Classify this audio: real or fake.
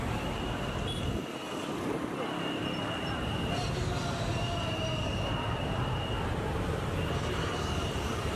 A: real